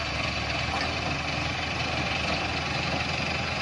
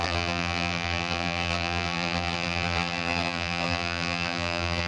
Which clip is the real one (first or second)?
first